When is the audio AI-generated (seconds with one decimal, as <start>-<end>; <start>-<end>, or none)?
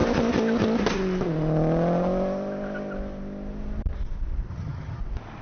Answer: 4.5-5.0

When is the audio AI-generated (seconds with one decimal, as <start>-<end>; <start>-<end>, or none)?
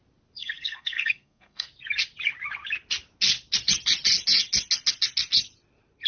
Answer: 0.4-1.7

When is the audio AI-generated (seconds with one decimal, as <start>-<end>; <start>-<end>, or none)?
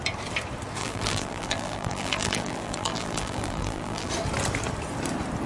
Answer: 0.8-4.1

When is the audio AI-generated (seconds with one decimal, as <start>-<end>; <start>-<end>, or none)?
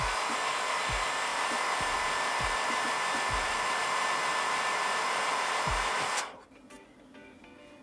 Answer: 1.3-5.9